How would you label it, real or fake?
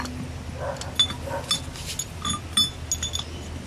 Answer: real